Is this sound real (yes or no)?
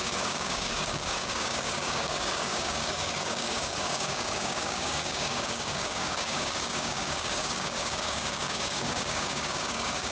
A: no